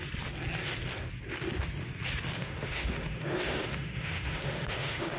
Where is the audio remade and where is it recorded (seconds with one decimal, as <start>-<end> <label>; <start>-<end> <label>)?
0.0-2.4 recorded; 2.4-5.2 remade